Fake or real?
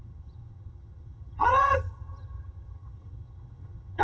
fake